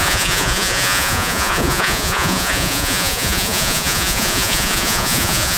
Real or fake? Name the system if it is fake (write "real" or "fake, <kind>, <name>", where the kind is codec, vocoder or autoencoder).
fake, vocoder, Vocos